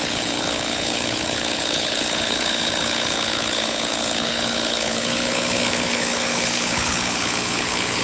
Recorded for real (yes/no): no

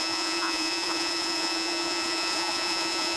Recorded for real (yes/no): no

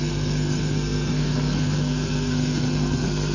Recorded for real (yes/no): no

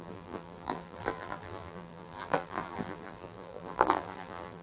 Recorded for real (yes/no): no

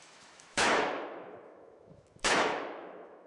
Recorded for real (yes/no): no